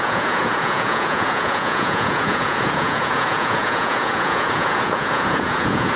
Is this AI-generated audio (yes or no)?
yes